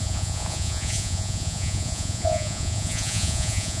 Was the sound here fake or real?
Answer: fake